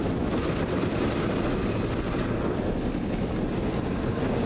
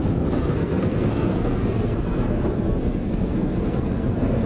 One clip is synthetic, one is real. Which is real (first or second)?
first